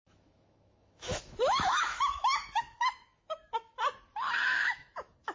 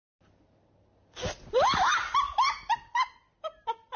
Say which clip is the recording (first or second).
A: second